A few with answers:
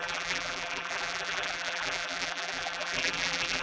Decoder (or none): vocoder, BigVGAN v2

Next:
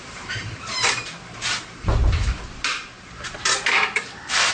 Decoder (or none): vocoder, BigVGAN v2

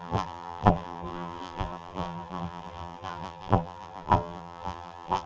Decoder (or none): vocoder, BigVGAN v2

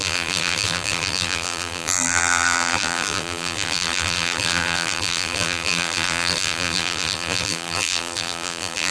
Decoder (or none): vocoder, BigVGAN v2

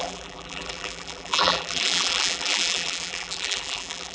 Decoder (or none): vocoder, BigVGAN v2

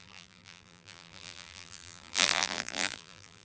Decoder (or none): vocoder, BigVGAN v2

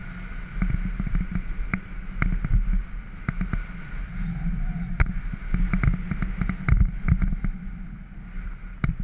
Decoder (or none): none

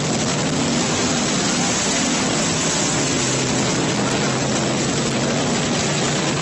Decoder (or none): none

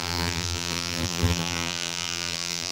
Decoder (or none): vocoder, BigVGAN v2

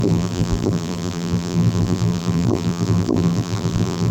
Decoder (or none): vocoder, BigVGAN v2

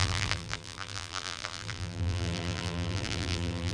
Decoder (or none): vocoder, BigVGAN v2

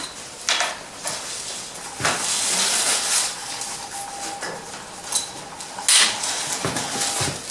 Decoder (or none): none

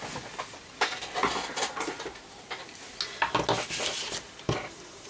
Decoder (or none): none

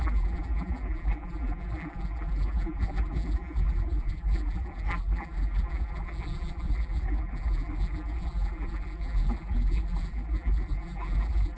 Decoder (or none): vocoder, BigVGAN v2